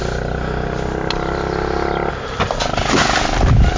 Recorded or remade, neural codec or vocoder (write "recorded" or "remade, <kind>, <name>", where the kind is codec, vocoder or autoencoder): recorded